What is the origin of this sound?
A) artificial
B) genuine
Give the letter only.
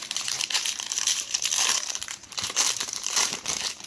A